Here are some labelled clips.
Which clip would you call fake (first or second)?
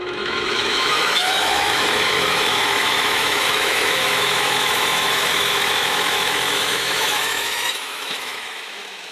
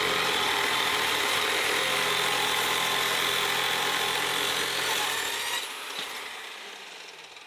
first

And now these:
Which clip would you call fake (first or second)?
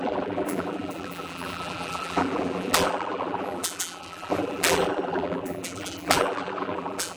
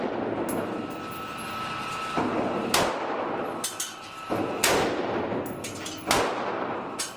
first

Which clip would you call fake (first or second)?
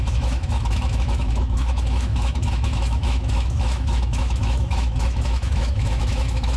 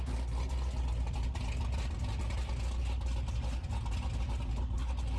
first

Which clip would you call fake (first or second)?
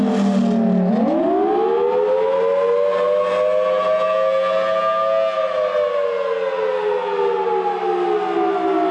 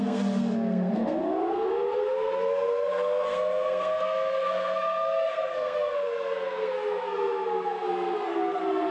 second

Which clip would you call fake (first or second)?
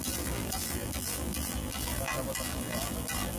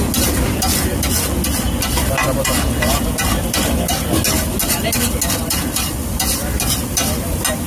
first